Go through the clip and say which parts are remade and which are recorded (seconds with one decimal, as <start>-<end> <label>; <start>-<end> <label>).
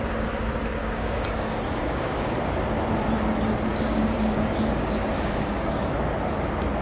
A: 0.0-0.8 recorded; 0.8-2.4 remade; 2.4-3.7 recorded; 3.7-5.9 remade; 5.9-6.8 recorded